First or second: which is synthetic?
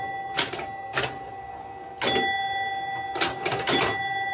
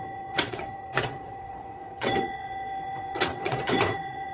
second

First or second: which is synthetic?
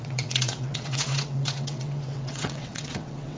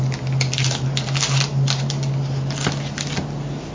first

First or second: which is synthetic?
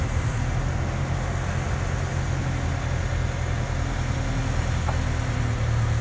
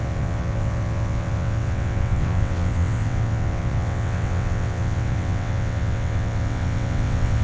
second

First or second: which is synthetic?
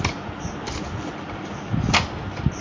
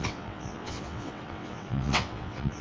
second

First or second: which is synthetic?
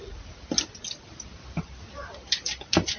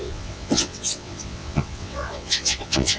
second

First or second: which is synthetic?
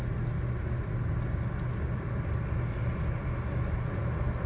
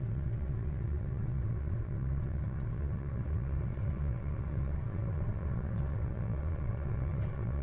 second